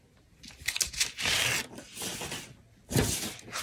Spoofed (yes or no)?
no